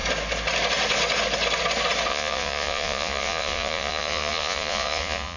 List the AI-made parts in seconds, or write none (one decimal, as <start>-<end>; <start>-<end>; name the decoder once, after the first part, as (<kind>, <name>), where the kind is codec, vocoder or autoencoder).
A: 2.1-5.4 (vocoder, Vocos)

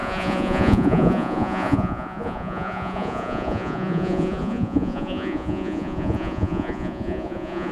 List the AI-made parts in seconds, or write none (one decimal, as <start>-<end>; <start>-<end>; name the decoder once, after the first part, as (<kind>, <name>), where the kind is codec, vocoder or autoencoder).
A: 0.0-7.7 (vocoder, Vocos)

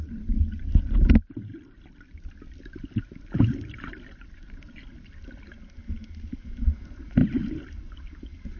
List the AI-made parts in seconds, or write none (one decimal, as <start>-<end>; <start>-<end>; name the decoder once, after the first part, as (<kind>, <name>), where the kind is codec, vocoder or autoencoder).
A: none

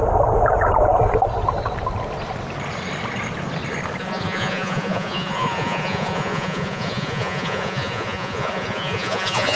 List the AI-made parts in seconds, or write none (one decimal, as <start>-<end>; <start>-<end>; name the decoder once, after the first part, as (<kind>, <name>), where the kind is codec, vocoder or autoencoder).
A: 4.0-9.6 (vocoder, Vocos)

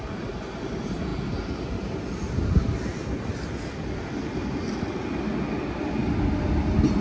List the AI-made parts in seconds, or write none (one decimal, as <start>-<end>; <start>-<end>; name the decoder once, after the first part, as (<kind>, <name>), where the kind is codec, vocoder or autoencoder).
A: none

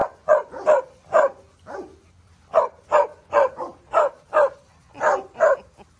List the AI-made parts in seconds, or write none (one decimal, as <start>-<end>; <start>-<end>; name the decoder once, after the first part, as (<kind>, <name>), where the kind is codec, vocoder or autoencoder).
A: 0.0-0.6 (vocoder, Vocos); 3.1-3.6

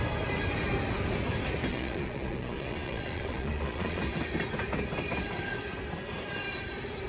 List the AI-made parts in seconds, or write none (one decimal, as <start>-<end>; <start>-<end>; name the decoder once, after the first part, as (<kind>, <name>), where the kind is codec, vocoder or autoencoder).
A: 1.7-4.0 (vocoder, Vocos)